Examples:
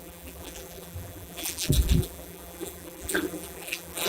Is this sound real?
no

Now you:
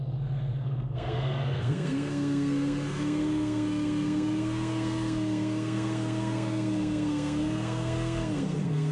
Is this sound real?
no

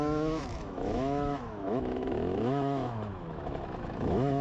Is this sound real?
no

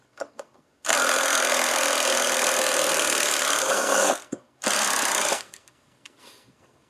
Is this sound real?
no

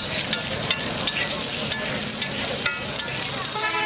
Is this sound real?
yes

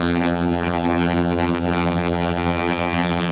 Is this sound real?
no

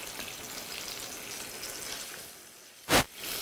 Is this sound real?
yes